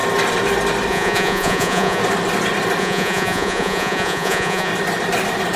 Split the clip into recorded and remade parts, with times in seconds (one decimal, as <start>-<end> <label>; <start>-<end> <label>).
0.0-0.9 recorded; 0.9-2.0 remade; 2.0-2.8 recorded; 2.8-4.7 remade; 4.7-5.6 recorded